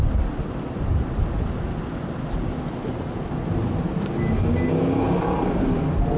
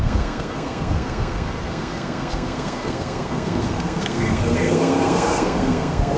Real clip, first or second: first